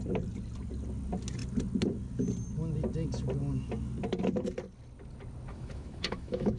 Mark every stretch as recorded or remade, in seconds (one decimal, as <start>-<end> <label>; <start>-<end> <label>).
0.0-5.5 recorded; 5.5-6.6 remade